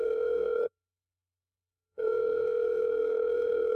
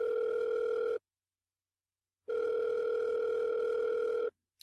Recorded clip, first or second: second